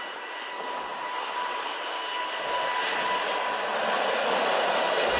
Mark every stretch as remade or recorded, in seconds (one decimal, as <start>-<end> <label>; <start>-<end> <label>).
0.0-5.2 remade

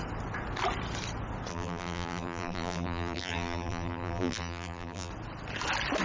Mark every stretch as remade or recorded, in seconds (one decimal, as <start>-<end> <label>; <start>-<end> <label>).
0.0-1.5 recorded; 1.5-5.1 remade; 5.1-6.0 recorded

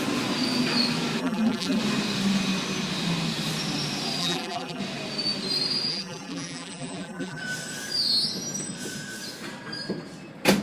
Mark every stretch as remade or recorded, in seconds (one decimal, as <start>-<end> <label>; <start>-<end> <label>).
0.0-1.2 recorded; 1.2-1.8 remade; 1.8-4.2 recorded; 4.2-4.8 remade; 4.8-5.9 recorded; 5.9-7.4 remade; 7.4-10.6 recorded

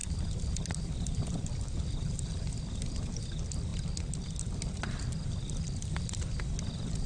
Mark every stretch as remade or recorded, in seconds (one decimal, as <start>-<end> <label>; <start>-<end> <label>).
0.0-3.2 remade; 3.2-7.1 recorded

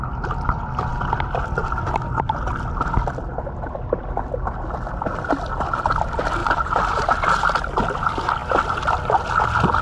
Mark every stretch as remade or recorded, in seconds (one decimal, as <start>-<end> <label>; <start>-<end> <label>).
0.0-6.4 recorded; 6.4-7.2 remade; 7.2-9.8 recorded

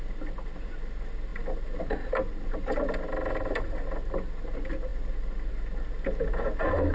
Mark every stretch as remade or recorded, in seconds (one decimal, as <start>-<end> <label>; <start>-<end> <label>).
0.0-6.9 recorded

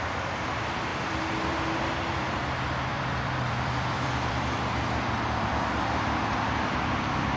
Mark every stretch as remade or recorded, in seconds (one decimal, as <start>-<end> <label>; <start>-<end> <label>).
0.0-0.9 recorded; 0.9-1.8 remade; 1.8-2.9 recorded; 2.9-5.6 remade; 5.6-7.4 recorded